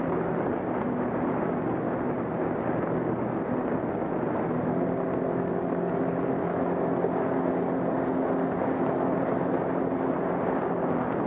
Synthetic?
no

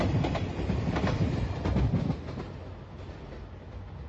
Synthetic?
no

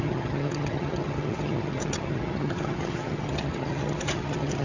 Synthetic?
yes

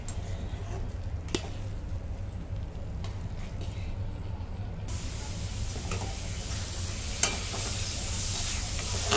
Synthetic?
no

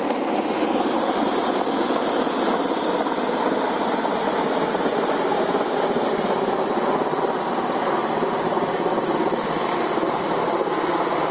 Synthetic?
no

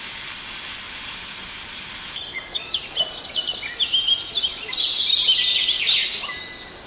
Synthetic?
no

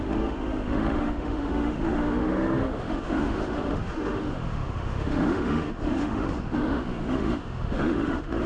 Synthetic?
yes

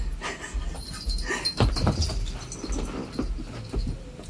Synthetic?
no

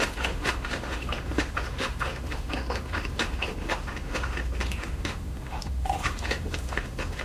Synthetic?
yes